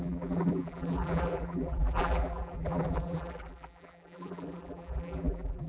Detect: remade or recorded remade